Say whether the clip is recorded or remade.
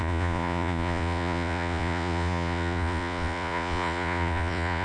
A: remade